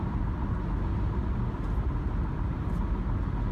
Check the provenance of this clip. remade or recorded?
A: recorded